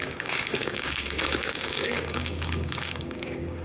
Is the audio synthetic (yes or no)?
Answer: yes